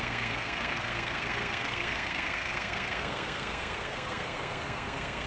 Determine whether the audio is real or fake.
fake